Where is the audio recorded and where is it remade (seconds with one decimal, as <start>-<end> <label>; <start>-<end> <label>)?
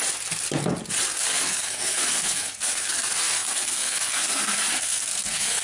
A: 0.0-1.2 recorded; 1.2-5.6 remade